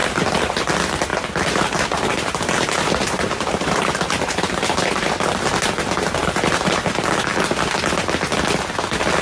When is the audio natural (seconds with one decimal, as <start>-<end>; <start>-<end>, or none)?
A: 0.7-1.1; 5.3-6.2; 6.8-9.2